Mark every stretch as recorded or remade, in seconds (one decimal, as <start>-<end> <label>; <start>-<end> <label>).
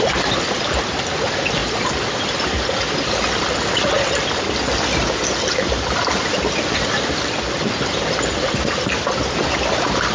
0.0-10.1 recorded